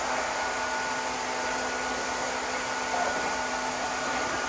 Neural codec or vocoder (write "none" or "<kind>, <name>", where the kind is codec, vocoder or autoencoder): none